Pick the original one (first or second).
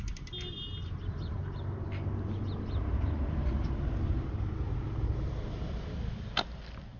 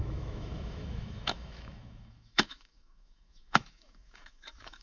first